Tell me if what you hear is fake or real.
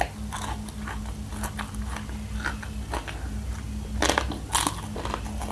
real